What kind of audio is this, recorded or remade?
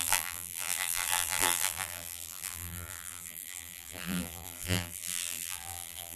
remade